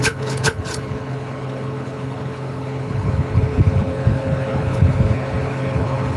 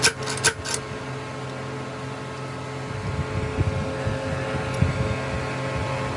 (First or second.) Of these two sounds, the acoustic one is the second